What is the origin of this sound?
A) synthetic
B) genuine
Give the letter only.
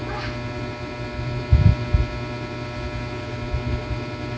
B